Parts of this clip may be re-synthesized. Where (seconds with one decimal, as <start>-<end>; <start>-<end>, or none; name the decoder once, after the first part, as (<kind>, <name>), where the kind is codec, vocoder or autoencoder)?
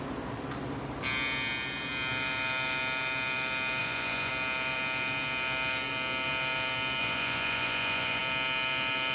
3.8-4.3 (vocoder, Vocos); 7.0-8.2